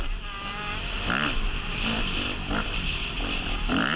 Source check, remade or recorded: recorded